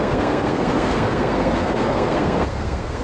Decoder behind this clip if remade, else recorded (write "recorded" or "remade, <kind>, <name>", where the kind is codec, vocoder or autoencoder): remade, codec, SNAC